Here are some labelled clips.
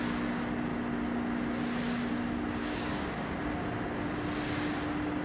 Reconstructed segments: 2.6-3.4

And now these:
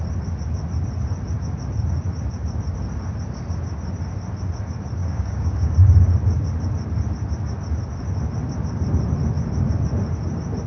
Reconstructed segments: 5.0-5.7